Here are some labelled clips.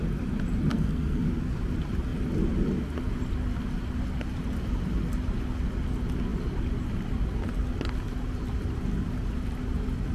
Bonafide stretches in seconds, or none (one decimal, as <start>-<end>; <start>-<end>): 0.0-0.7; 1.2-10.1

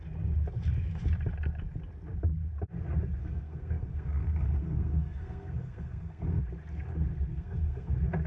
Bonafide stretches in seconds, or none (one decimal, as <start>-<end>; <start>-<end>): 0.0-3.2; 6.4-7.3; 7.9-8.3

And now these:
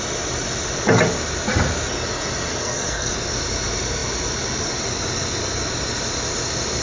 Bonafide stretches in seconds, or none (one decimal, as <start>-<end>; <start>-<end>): 0.0-2.5; 3.1-6.8

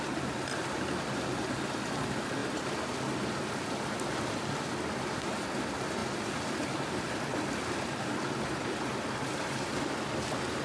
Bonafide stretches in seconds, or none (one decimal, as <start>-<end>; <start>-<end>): 0.0-10.6

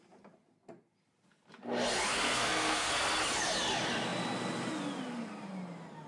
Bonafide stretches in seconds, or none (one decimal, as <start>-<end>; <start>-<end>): 0.0-2.1; 2.9-6.1

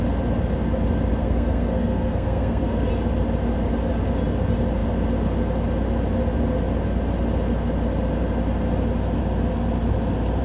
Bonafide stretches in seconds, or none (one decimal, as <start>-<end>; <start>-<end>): 0.0-1.2; 2.9-10.4

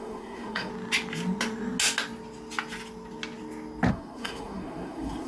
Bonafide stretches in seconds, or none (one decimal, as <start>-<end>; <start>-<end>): 0.7-3.9

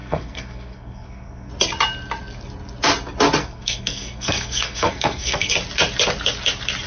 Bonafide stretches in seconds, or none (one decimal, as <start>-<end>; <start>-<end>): 1.5-3.4; 5.5-6.9